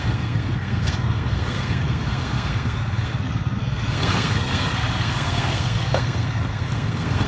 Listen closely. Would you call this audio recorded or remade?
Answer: remade